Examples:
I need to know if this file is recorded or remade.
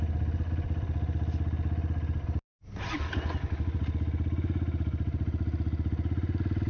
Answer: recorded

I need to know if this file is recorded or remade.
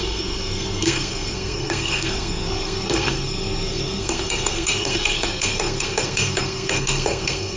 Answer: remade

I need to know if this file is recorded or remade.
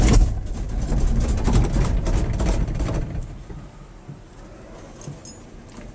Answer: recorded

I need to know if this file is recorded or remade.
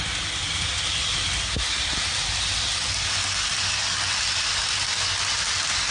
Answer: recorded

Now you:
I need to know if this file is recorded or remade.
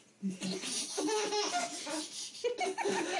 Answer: recorded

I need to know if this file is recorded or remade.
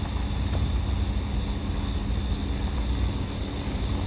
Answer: recorded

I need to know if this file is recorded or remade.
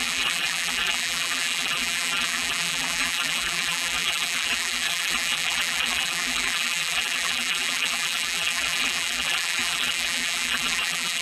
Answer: remade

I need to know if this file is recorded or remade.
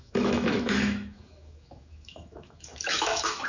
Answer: remade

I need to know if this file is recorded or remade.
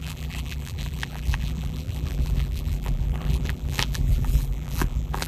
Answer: remade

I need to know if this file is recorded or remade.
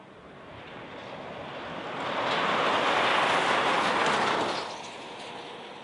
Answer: recorded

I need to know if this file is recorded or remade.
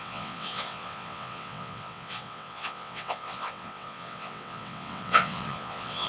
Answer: remade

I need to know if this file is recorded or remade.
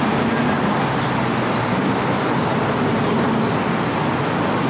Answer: recorded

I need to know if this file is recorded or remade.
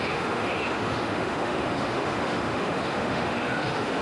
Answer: remade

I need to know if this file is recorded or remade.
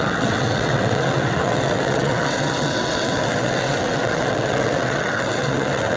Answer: remade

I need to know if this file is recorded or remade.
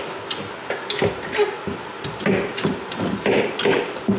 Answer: recorded